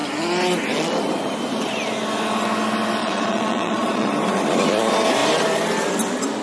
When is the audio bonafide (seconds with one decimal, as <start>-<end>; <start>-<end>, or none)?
0.0-3.0; 4.1-6.4